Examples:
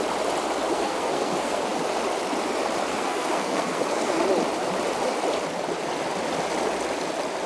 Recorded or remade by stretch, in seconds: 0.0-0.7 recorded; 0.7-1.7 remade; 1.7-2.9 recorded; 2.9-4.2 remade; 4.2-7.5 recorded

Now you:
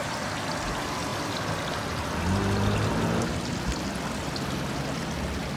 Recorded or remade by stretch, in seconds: 0.0-5.6 recorded